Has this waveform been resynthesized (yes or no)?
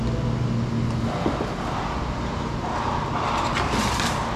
no